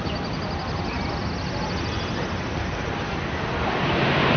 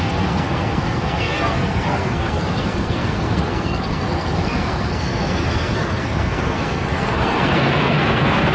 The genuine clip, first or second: first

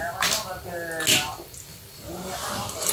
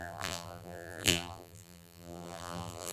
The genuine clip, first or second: first